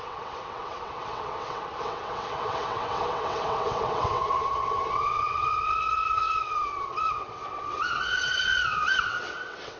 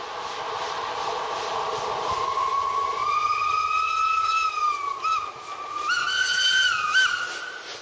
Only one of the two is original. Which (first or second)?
second